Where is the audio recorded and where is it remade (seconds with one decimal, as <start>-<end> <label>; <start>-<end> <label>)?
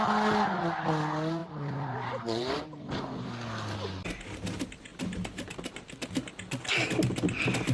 0.0-1.4 recorded; 1.4-2.6 remade; 2.6-4.9 recorded; 4.9-6.3 remade; 6.3-7.7 recorded